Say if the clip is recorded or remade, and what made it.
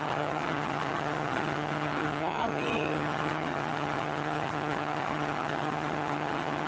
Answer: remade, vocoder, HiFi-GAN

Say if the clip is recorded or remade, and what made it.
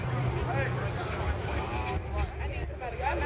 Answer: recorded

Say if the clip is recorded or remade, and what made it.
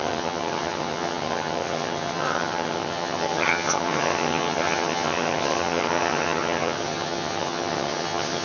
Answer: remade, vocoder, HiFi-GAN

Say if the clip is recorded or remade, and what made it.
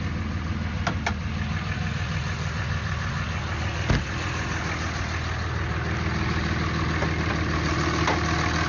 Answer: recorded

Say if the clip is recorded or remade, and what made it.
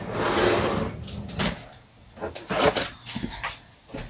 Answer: recorded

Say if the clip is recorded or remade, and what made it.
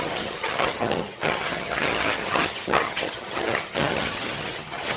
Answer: remade, vocoder, HiFi-GAN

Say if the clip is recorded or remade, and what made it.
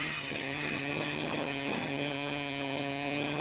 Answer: remade, vocoder, HiFi-GAN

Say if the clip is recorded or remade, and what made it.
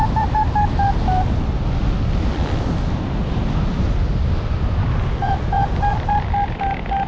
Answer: recorded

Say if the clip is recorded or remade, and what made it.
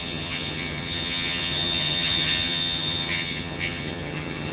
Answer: remade, vocoder, HiFi-GAN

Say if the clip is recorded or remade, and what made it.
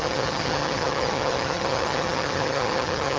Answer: remade, vocoder, HiFi-GAN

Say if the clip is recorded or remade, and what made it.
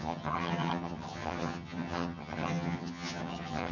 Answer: remade, vocoder, HiFi-GAN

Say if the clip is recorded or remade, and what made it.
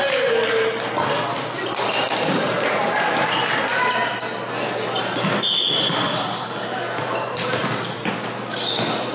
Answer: recorded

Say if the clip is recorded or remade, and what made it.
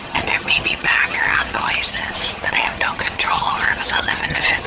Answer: remade, vocoder, HiFi-GAN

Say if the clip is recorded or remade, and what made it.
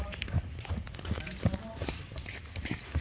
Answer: recorded